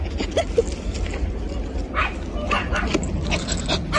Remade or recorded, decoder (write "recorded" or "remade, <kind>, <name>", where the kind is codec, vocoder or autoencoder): recorded